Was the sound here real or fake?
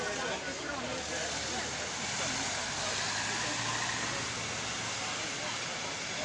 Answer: real